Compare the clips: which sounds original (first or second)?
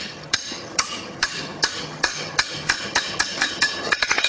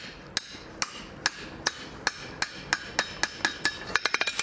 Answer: second